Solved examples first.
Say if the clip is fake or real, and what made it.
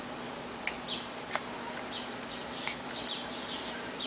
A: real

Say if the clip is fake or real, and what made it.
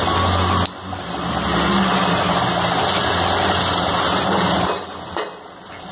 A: real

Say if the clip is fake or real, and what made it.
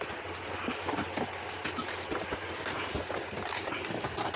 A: real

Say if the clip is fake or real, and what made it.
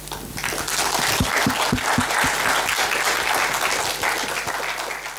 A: real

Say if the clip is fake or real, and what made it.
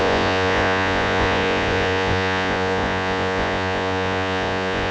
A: fake, vocoder, Vocos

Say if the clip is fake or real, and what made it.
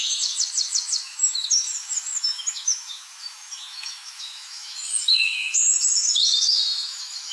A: fake, autoencoder, DAC-VAE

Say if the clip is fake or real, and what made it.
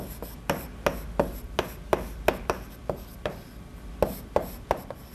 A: real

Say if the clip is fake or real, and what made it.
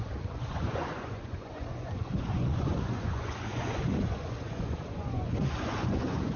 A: fake, vocoder, Vocos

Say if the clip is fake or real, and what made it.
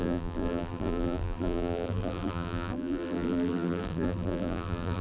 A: fake, vocoder, BigVGAN v2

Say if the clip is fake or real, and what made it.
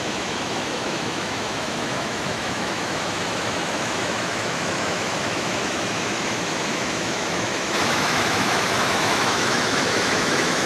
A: fake, autoencoder, DAC-VAE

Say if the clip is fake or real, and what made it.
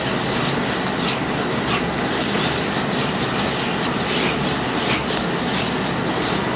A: real